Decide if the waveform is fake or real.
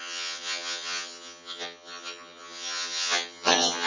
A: fake